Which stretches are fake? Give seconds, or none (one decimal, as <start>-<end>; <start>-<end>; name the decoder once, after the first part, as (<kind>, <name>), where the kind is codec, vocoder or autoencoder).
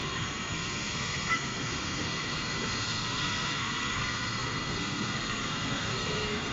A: 0.0-6.5 (codec, SNAC)